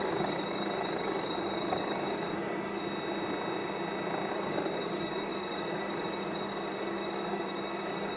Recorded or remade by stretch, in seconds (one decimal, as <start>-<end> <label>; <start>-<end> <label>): 0.0-2.8 remade; 2.8-4.3 recorded; 4.3-8.2 remade